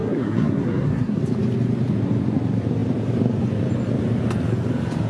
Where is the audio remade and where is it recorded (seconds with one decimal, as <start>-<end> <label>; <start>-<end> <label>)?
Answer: 0.0-1.2 remade; 1.2-5.1 recorded